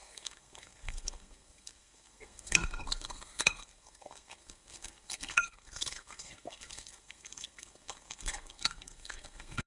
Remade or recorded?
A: remade